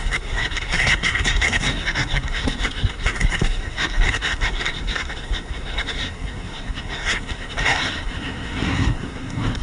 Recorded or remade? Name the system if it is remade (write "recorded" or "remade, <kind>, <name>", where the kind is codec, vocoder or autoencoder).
remade, codec, SNAC